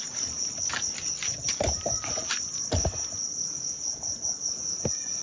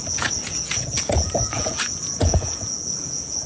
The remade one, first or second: second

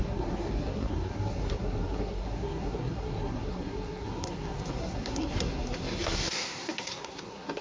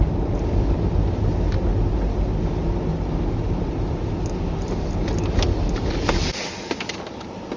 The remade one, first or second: first